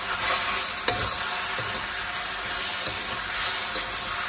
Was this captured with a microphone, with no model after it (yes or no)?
yes